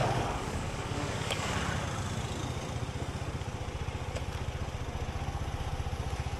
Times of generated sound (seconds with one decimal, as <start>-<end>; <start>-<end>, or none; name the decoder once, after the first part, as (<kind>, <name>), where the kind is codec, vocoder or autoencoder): 0.0-1.5 (codec, DAC)